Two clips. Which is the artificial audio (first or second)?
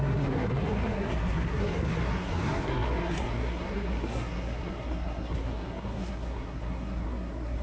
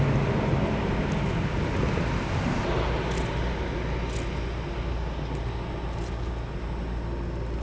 first